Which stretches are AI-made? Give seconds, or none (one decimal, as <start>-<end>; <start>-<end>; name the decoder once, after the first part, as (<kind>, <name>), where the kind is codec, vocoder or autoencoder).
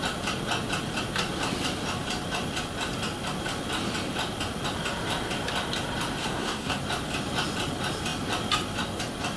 6.2-6.8 (codec, SNAC)